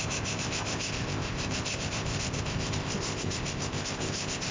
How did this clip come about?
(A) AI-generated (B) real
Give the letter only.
A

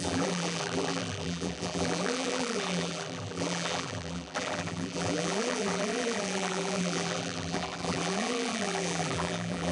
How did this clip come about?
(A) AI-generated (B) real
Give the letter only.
A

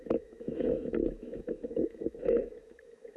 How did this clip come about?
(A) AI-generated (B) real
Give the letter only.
A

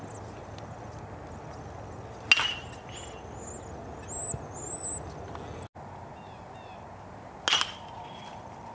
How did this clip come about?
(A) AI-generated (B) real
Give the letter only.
B